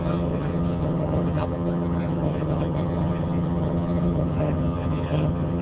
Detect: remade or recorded remade